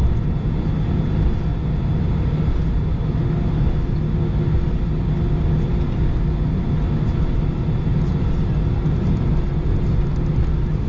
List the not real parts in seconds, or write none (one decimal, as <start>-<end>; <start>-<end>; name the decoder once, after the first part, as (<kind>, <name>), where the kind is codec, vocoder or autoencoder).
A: none